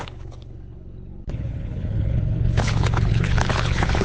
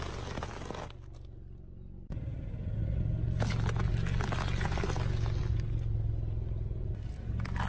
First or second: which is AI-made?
first